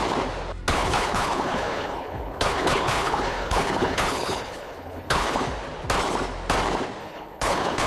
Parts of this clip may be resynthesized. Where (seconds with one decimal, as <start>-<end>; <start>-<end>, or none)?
0.7-5.4; 7.0-7.9